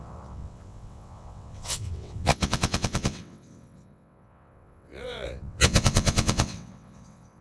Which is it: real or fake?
fake